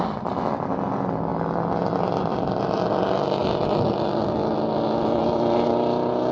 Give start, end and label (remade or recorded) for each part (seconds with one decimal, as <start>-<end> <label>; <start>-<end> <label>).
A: 0.0-6.3 recorded